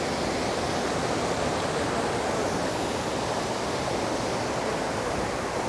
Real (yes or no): yes